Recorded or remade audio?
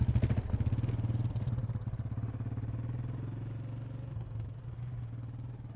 recorded